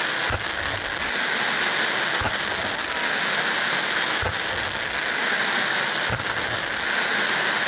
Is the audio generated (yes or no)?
no